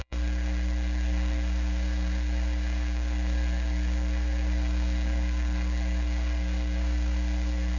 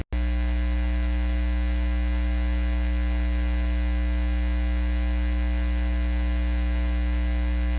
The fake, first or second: first